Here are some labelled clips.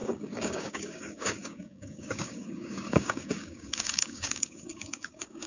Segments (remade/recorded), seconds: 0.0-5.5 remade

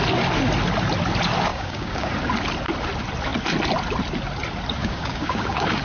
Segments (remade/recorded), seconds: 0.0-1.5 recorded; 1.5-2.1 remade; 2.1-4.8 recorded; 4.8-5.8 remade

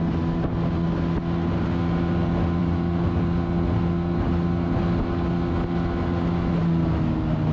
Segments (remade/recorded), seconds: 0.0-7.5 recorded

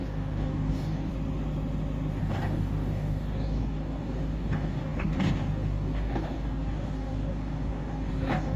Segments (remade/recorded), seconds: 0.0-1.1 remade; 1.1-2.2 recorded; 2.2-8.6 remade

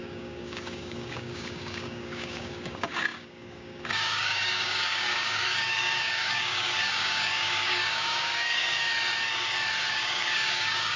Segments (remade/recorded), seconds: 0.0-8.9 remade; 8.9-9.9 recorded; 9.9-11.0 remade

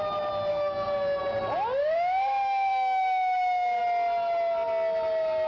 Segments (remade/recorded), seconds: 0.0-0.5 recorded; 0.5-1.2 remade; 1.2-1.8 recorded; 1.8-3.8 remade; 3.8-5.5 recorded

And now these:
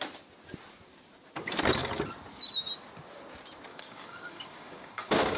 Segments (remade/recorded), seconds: 0.0-3.7 recorded; 3.7-5.4 remade

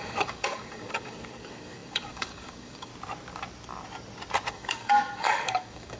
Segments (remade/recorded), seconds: 0.0-2.9 remade; 2.9-4.5 recorded; 4.5-6.0 remade